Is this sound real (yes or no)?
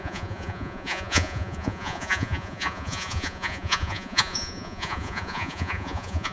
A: no